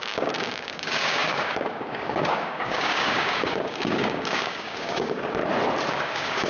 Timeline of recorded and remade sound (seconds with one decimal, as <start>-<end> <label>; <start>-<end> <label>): 0.0-5.4 remade; 5.4-5.9 recorded; 5.9-6.5 remade